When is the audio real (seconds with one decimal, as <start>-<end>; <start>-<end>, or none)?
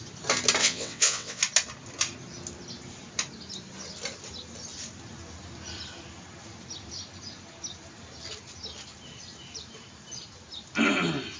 0.0-0.6; 1.4-11.4